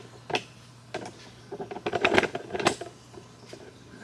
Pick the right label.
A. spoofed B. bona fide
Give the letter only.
B